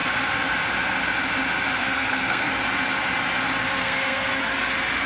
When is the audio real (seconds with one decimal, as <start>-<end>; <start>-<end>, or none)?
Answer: 0.0-1.8; 2.5-3.8; 4.4-5.1